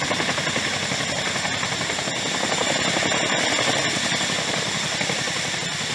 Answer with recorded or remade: recorded